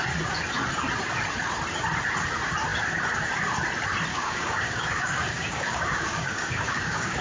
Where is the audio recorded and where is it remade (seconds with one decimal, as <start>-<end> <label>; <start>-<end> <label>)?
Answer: 0.0-4.1 recorded; 4.1-7.2 remade

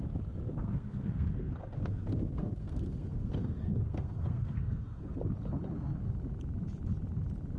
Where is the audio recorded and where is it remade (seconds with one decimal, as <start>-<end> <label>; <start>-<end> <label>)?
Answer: 0.0-0.6 recorded; 0.6-5.2 remade; 5.2-7.6 recorded

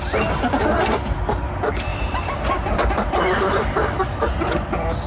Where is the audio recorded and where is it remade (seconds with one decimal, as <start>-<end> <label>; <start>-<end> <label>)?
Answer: 0.0-1.9 recorded; 1.9-4.0 remade; 4.0-5.1 recorded

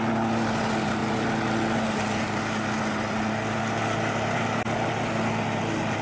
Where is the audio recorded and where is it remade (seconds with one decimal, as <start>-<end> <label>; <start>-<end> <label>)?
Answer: 0.0-6.0 recorded

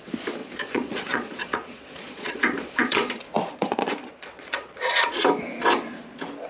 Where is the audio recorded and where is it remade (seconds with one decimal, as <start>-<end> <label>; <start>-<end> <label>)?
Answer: 0.0-0.4 recorded; 0.4-3.1 remade; 3.1-3.5 recorded; 3.5-5.2 remade; 5.2-6.5 recorded

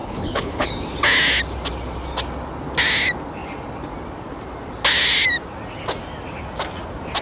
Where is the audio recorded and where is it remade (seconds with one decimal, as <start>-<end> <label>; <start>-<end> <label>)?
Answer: 0.0-0.7 remade; 0.7-7.2 recorded

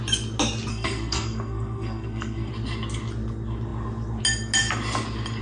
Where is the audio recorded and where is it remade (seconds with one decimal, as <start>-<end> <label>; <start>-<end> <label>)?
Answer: 0.0-0.7 recorded; 0.7-2.5 remade; 2.5-5.4 recorded